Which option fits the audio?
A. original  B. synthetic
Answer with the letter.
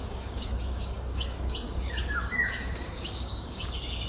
B